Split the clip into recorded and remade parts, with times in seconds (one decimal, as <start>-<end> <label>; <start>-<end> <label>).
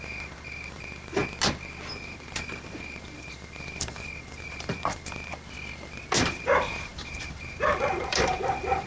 0.0-1.2 remade; 1.2-1.9 recorded; 1.9-5.3 remade; 5.3-6.2 recorded; 6.2-8.9 remade